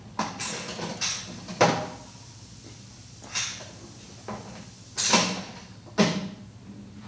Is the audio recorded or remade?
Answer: recorded